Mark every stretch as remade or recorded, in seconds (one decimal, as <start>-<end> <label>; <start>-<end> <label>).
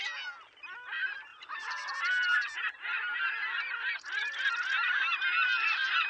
0.0-1.3 recorded; 1.3-2.6 remade; 2.6-3.4 recorded; 3.4-4.5 remade; 4.5-6.1 recorded